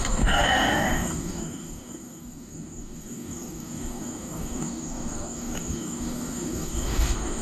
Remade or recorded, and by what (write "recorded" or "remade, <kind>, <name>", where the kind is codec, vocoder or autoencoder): remade, codec, DAC